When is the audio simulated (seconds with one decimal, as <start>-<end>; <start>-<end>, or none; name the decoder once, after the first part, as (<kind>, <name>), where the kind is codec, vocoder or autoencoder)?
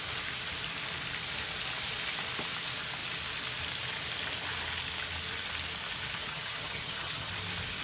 6.2-7.3 (vocoder, HiFi-GAN)